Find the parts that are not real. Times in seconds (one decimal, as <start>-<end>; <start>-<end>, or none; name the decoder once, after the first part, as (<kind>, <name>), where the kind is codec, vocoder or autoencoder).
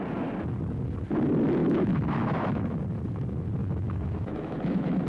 1.6-2.8 (autoencoder, DAC-VAE); 3.6-5.1